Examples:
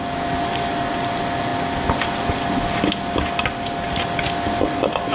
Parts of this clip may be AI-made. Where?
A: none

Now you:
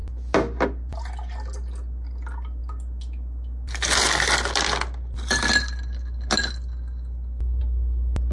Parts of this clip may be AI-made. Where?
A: none

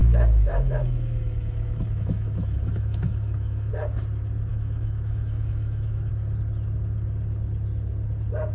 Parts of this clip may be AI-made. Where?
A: 0.0-3.7 (autoencoder, DAC-VAE); 4.5-6.1

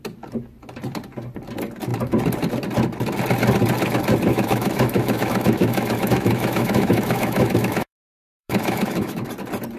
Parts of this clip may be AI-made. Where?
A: 4.3-9.3 (autoencoder, DAC-VAE)

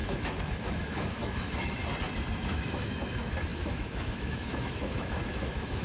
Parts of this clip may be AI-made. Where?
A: 0.0-1.8 (autoencoder, DAC-VAE); 2.5-5.8

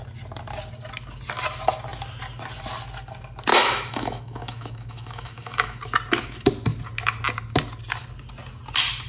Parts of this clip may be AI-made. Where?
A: 3.5-5.8 (autoencoder, DAC-VAE)

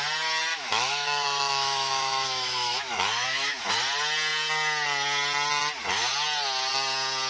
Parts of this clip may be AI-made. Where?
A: 0.5-3.7 (autoencoder, DAC-VAE)